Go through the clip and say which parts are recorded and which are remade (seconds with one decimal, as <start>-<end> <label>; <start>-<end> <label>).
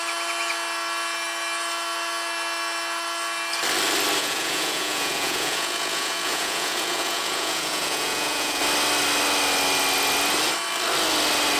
0.0-4.2 recorded; 4.2-8.6 remade; 8.6-11.6 recorded